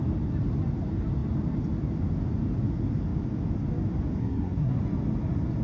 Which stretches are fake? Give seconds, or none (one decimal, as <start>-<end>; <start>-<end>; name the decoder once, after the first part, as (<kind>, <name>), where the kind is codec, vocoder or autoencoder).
4.2-4.8 (codec, SNAC)